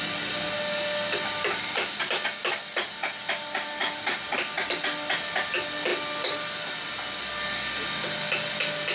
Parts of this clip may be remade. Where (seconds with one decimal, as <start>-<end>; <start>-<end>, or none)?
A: none